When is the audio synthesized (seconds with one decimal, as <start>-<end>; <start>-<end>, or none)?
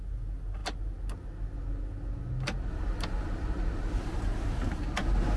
none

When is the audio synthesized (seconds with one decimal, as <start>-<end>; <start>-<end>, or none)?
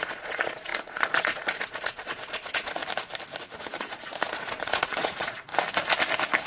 0.0-2.8; 3.8-5.5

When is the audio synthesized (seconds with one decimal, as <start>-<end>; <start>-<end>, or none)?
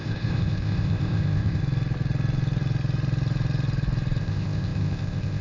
0.0-1.6; 4.2-5.4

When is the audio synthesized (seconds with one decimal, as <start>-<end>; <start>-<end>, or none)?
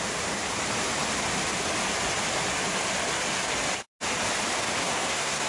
4.8-5.5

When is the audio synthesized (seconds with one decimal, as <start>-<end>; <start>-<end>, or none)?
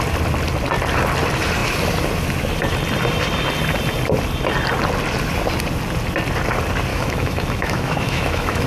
6.9-8.7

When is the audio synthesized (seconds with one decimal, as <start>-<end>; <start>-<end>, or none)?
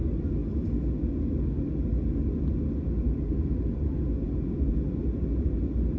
none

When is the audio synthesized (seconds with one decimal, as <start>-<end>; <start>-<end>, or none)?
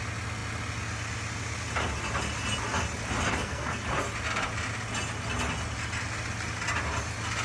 3.3-3.8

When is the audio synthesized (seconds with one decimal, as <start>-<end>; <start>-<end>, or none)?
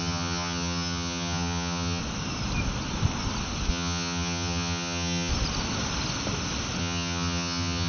0.0-2.0; 3.7-5.3; 6.8-7.9